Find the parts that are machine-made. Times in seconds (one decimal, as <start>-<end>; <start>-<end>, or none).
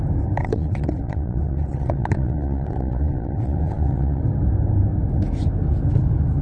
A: 0.4-4.2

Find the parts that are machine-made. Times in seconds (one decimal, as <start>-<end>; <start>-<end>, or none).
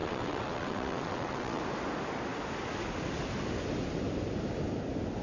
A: 0.0-1.6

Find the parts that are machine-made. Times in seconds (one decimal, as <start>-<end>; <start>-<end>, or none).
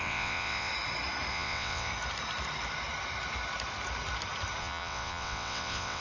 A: 0.0-0.7; 1.3-1.9; 4.6-6.0